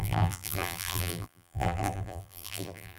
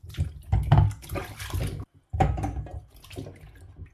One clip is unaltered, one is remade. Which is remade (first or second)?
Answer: first